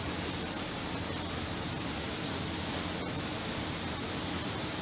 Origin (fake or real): real